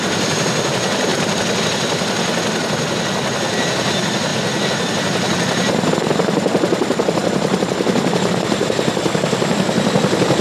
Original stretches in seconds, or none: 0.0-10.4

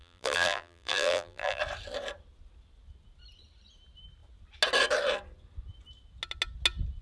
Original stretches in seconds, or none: 1.6-7.0